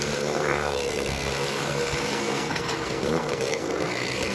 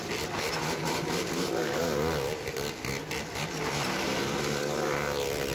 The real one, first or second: second